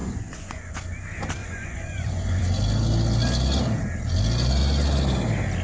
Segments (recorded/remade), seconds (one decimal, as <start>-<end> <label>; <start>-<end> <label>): 0.0-0.7 remade; 0.7-1.4 recorded; 1.4-2.4 remade; 2.4-5.6 recorded